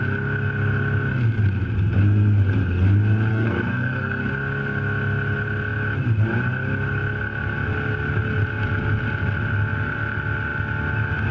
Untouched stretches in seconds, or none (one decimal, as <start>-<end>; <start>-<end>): 0.0-3.3; 4.3-11.3